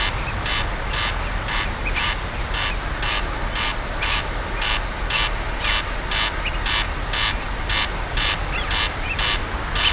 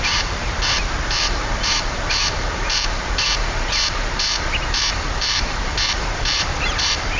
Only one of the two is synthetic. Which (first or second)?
second